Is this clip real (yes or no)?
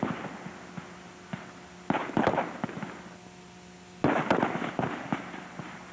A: yes